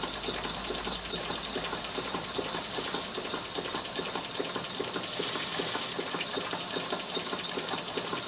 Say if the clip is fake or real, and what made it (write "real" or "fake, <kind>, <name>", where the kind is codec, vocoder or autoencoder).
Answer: real